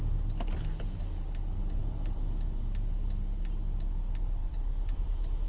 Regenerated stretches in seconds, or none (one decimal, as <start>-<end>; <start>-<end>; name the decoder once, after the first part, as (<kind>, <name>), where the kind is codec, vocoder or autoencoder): 1.8-2.6 (vocoder, BigVGAN v2); 4.4-5.5